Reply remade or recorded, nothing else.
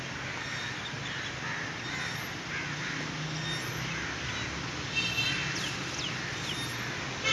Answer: recorded